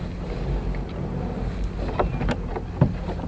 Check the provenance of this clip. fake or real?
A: real